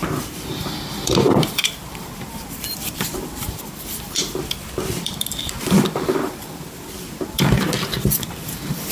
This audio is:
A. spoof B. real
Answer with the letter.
A